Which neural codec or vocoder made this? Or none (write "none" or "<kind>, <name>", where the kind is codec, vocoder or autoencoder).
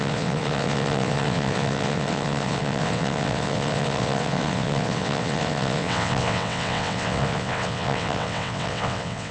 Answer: vocoder, WaveNeXt